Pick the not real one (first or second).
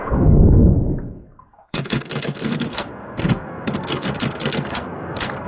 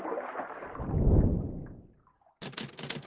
first